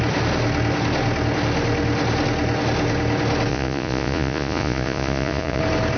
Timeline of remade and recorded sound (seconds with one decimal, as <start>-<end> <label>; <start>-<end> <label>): 0.0-3.5 recorded; 3.5-5.6 remade; 5.6-6.0 recorded